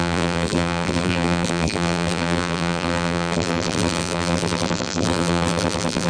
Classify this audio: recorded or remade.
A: remade